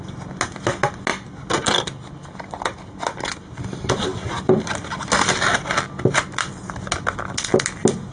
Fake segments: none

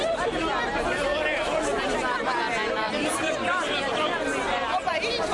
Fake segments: none

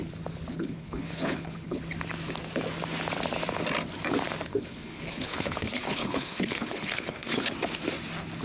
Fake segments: 0.5-1.8 (codec, HILCodec); 4.5-7.5